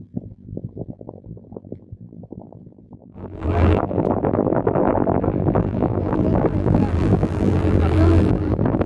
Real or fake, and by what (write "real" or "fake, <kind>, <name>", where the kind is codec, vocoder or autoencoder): fake, vocoder, BigVGAN v2